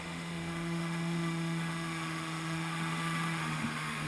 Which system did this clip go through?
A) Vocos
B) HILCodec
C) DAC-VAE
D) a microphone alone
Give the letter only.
C